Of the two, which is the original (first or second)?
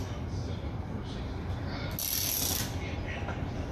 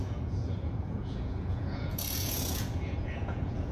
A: first